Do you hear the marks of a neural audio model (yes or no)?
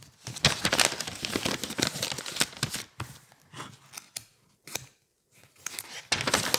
no